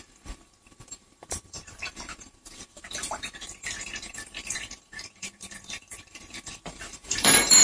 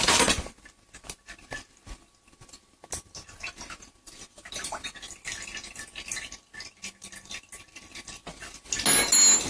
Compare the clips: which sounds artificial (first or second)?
first